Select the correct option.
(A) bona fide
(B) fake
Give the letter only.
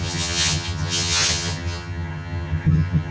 B